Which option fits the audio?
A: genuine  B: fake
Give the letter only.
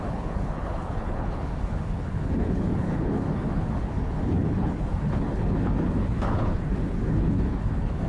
B